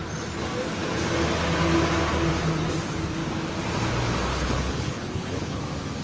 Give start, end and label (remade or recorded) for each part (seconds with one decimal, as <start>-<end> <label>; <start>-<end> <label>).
0.0-4.3 recorded; 4.3-5.6 remade; 5.6-6.0 recorded